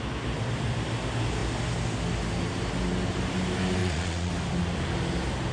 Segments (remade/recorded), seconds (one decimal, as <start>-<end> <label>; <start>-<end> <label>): 0.0-3.8 recorded; 3.8-4.3 remade; 4.3-5.5 recorded